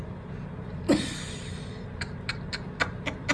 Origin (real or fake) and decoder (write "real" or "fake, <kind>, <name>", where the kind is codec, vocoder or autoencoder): real